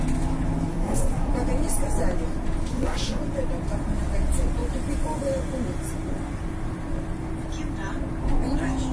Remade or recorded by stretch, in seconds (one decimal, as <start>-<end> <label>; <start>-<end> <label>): 0.0-0.7 recorded; 0.7-1.3 remade; 1.3-2.7 recorded; 2.7-3.2 remade; 3.2-8.9 recorded

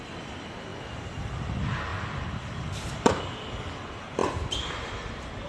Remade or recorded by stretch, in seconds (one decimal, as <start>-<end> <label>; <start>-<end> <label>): 0.0-1.9 recorded; 1.9-3.2 remade; 3.2-5.5 recorded